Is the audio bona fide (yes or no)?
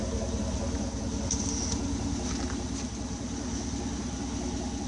yes